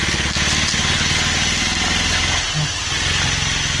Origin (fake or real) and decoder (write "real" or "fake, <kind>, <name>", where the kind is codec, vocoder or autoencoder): real